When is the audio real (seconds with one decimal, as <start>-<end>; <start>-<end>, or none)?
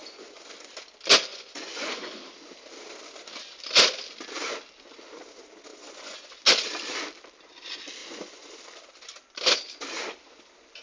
0.7-1.3; 2.2-5.7; 6.4-8.0; 8.6-10.8